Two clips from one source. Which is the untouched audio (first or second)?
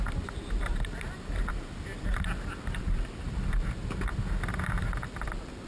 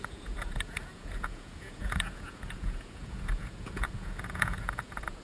first